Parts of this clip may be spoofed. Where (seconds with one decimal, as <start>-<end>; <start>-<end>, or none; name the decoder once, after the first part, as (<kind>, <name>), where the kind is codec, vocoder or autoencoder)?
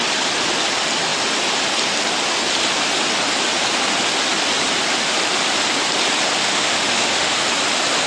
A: 6.4-7.3 (autoencoder, DAC-VAE)